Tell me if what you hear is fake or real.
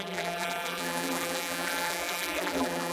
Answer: fake